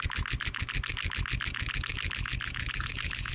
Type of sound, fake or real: real